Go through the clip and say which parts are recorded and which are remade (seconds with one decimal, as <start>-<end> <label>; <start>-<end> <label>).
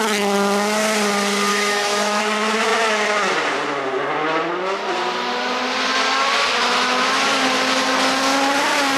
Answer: 0.0-1.5 recorded; 1.5-2.2 remade; 2.2-9.0 recorded